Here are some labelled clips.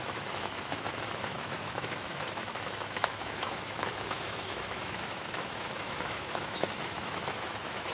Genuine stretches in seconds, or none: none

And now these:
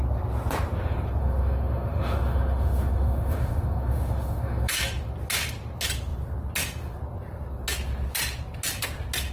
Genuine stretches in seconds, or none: 0.0-1.2; 4.8-9.3

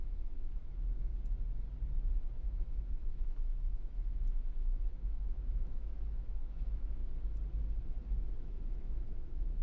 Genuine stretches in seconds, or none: 1.1-2.3; 7.0-8.3